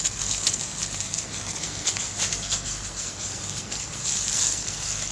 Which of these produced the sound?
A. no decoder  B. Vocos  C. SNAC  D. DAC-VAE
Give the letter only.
C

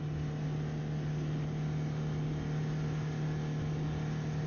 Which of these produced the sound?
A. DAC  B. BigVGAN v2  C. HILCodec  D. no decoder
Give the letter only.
D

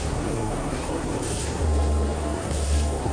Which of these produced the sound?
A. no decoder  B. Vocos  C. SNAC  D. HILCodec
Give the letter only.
C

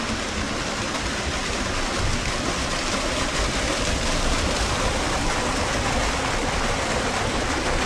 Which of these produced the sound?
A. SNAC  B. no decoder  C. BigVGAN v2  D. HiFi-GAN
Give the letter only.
C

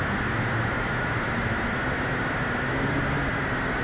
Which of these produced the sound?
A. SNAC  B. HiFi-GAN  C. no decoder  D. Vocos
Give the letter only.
C